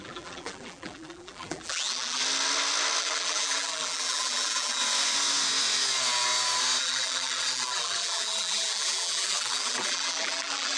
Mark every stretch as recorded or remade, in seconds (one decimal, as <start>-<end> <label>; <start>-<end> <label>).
0.0-2.2 remade; 2.2-3.0 recorded; 3.0-4.8 remade; 4.8-6.8 recorded; 6.8-10.8 remade